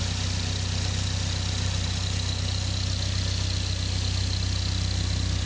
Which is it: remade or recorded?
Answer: recorded